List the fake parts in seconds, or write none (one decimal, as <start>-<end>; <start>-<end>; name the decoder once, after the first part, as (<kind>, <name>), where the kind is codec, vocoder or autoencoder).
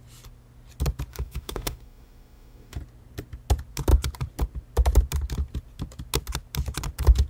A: 1.1-2.8 (autoencoder, DAC-VAE)